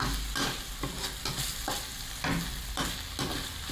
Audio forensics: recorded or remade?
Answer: recorded